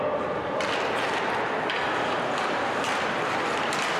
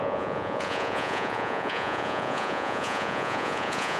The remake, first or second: second